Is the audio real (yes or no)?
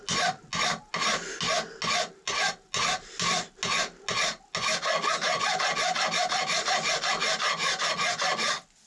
yes